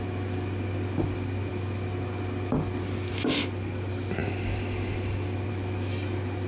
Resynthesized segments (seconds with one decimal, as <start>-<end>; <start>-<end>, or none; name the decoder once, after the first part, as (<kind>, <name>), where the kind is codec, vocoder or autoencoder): none